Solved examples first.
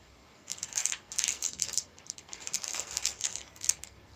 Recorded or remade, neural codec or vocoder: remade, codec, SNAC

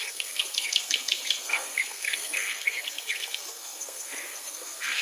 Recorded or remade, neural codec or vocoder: remade, codec, SNAC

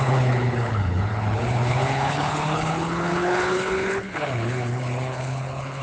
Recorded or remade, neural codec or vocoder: remade, codec, HILCodec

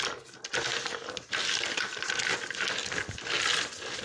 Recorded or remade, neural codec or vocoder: recorded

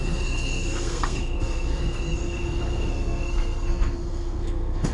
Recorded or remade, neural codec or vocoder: remade, codec, SNAC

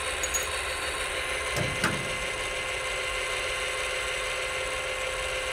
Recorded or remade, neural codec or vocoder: recorded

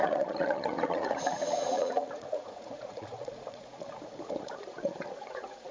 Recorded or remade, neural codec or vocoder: remade, vocoder, Vocos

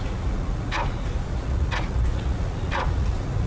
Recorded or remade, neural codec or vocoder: remade, vocoder, Vocos